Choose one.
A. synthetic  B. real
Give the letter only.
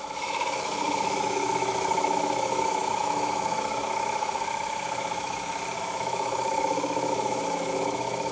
A